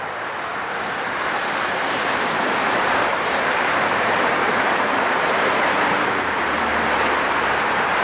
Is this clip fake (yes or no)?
yes